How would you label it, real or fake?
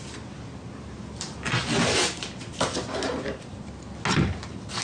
real